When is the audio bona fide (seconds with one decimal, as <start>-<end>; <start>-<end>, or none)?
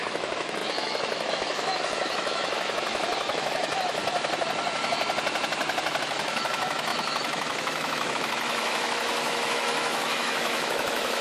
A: 4.0-6.0